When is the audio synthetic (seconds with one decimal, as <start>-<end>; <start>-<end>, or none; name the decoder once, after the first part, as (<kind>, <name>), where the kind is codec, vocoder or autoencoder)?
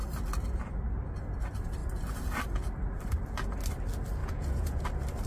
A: 4.2-4.8 (vocoder, Vocos)